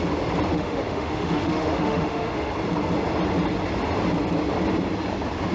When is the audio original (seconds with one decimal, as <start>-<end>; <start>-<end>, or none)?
0.0-0.5; 2.5-5.5